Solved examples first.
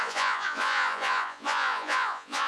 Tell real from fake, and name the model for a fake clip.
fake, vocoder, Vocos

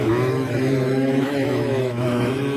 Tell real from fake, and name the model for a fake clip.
fake, autoencoder, DAC-VAE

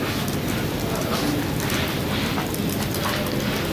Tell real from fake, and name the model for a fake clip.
real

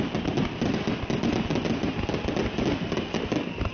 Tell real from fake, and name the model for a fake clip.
real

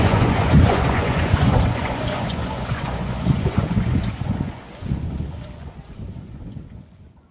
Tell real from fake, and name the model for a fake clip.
fake, vocoder, Vocos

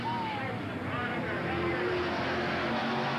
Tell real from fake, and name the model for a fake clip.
real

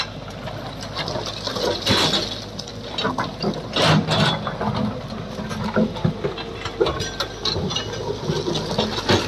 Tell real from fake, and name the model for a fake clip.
real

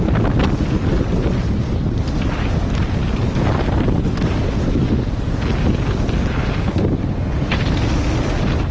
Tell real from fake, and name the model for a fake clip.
real